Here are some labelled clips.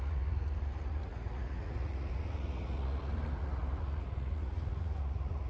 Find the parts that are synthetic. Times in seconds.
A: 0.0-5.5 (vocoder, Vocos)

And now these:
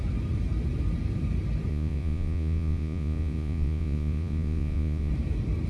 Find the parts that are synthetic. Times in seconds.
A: 1.7-5.1 (vocoder, Vocos)

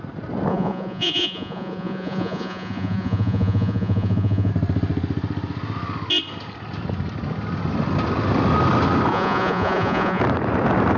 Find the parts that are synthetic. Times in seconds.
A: 0.5-4.5 (vocoder, Vocos); 9.1-10.2